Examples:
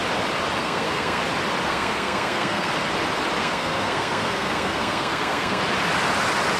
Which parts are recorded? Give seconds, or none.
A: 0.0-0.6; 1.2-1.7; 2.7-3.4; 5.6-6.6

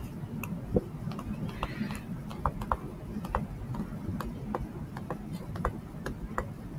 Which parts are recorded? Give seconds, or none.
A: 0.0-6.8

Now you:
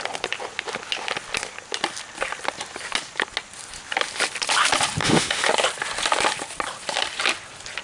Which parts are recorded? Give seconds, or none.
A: 0.0-5.0; 5.5-7.8

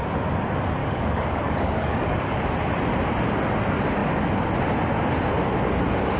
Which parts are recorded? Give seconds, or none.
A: 0.0-0.8; 2.4-6.2

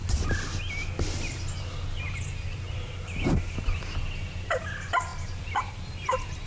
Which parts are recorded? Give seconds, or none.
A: 0.0-6.5

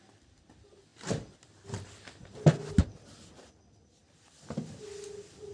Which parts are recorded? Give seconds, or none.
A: 0.0-5.5